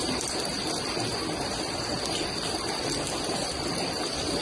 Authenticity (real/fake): real